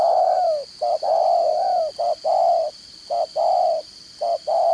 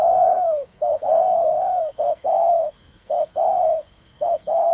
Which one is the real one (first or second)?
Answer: first